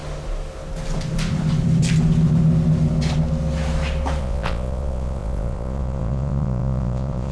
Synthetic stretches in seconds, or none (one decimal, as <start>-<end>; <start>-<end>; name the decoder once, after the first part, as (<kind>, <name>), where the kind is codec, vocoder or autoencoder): 4.2-7.3 (vocoder, Vocos)